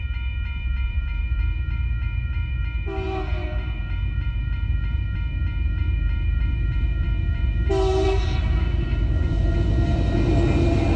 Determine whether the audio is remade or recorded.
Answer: remade